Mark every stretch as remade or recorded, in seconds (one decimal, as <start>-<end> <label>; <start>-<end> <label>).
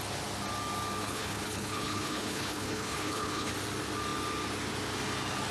0.0-1.0 recorded; 1.0-3.5 remade; 3.5-5.5 recorded